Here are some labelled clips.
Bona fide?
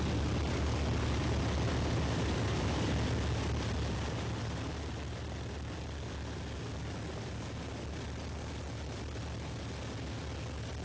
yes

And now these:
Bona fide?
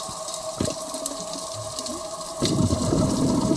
no